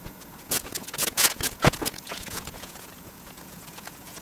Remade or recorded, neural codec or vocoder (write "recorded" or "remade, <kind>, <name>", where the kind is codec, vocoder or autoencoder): remade, vocoder, Vocos